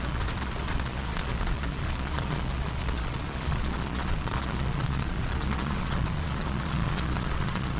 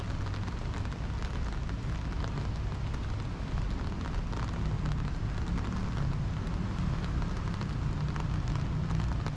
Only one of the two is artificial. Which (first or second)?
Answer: first